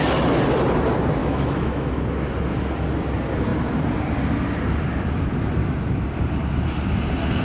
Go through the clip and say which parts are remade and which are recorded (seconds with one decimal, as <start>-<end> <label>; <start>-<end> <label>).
0.0-1.2 recorded; 1.2-1.9 remade; 1.9-7.4 recorded